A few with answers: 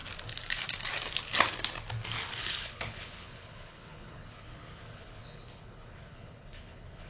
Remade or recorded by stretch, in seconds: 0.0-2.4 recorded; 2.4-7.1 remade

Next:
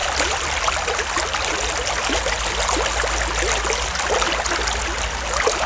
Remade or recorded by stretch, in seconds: 0.0-5.7 recorded

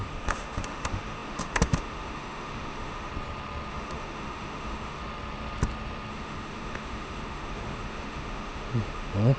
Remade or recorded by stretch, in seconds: 0.0-3.1 remade; 3.1-3.7 recorded; 3.7-5.0 remade; 5.0-6.1 recorded; 6.1-9.4 remade

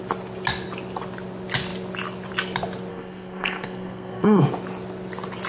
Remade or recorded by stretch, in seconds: 0.0-2.9 recorded; 2.9-4.4 remade; 4.4-5.5 recorded

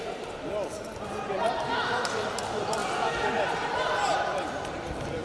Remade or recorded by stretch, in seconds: 0.0-5.2 recorded

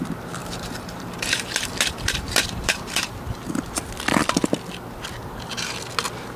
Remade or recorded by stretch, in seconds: 0.0-0.4 recorded; 0.4-3.1 remade; 3.1-6.4 recorded

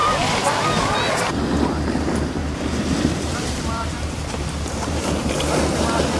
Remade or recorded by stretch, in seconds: 0.0-2.4 recorded; 2.4-5.3 remade; 5.3-6.2 recorded

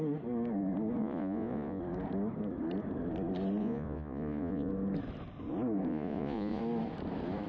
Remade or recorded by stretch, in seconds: 0.0-1.0 recorded; 1.0-1.8 remade; 1.8-3.6 recorded; 3.6-4.7 remade; 4.7-5.9 recorded; 5.9-6.6 remade; 6.6-7.5 recorded